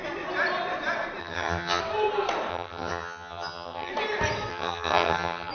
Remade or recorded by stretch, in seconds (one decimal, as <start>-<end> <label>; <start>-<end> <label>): 0.0-1.2 recorded; 1.2-1.8 remade; 1.8-2.5 recorded; 2.5-3.9 remade; 3.9-4.5 recorded; 4.5-5.5 remade